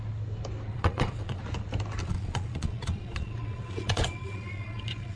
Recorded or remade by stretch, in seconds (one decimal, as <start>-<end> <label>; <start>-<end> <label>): 0.0-0.7 recorded; 0.7-1.4 remade; 1.4-2.0 recorded; 2.0-5.2 remade